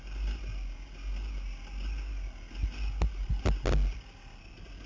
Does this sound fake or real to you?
real